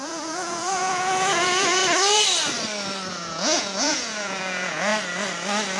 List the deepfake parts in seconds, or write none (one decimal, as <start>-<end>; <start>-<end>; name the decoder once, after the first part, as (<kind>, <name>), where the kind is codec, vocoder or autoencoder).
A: 0.0-1.8 (vocoder, Vocos); 3.1-4.9